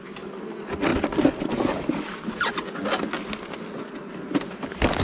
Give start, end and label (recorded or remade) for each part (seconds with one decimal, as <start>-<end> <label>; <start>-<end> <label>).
0.0-5.0 recorded